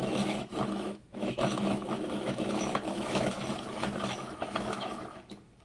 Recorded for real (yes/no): no